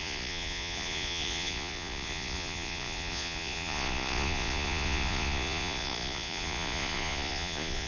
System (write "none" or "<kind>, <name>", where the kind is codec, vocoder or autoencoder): vocoder, Vocos